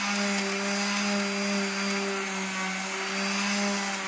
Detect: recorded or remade recorded